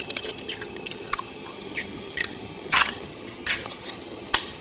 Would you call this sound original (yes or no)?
no